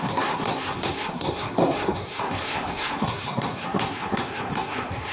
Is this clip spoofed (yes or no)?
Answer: yes